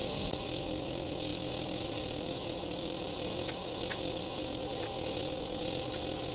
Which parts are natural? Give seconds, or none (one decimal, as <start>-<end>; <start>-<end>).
0.6-1.3; 4.4-6.3